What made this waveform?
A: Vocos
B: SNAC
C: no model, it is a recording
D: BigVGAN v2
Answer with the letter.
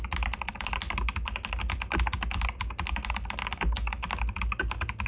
C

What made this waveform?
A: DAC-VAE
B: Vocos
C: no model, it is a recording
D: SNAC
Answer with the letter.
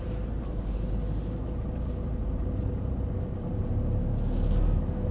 C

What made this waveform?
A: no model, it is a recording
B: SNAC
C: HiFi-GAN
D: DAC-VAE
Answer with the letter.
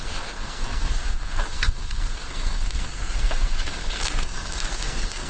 B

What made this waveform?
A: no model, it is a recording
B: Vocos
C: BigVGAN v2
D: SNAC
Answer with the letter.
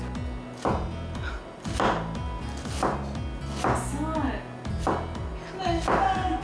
A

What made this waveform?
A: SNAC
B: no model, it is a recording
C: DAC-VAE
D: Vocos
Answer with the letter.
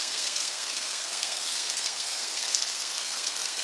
A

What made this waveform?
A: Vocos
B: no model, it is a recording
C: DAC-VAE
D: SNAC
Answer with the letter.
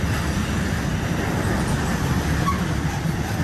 B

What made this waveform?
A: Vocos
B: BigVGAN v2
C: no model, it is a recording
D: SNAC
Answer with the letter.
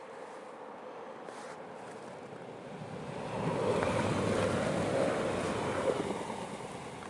C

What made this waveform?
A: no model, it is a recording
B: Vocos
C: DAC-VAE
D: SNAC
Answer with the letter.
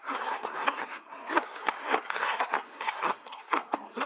D